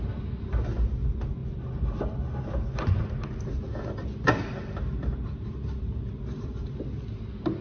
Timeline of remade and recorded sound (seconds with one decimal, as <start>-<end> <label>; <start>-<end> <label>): 0.0-7.6 recorded